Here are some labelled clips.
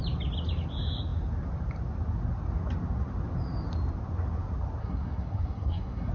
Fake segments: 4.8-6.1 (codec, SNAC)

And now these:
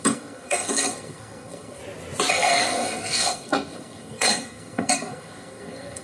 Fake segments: 0.0-1.8 (codec, SNAC); 2.3-6.0

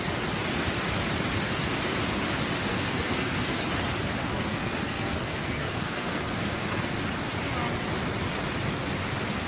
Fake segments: 2.7-3.6 (codec, SNAC); 4.2-7.0

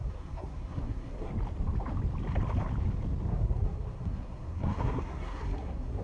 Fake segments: 0.0-1.3 (codec, SNAC); 3.3-6.0